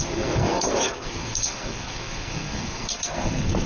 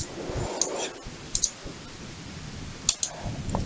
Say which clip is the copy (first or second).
first